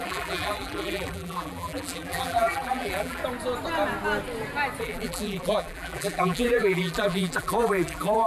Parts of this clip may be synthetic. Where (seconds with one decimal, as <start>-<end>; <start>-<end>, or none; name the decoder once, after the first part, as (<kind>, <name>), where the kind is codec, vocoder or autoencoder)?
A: 0.0-3.2 (vocoder, BigVGAN v2); 4.8-8.3